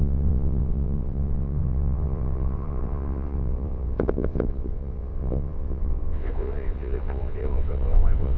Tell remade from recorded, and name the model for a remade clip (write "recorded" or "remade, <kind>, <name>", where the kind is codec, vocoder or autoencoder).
remade, vocoder, WaveNeXt